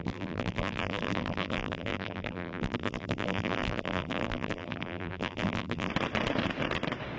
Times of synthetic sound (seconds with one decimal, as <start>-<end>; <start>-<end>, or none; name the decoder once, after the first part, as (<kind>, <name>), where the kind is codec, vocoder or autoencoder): 0.0-5.9 (vocoder, BigVGAN v2)